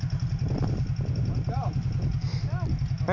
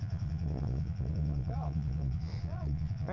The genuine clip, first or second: first